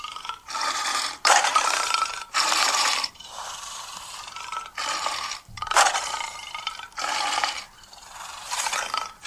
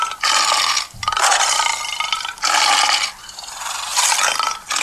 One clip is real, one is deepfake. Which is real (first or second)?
second